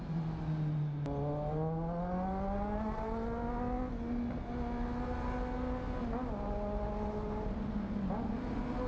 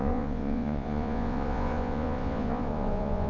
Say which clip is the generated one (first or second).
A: second